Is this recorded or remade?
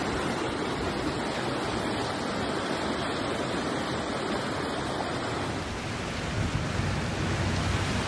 recorded